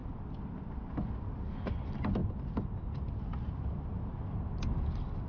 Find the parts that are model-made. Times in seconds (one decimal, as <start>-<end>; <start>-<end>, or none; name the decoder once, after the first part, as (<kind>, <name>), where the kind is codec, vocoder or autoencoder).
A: none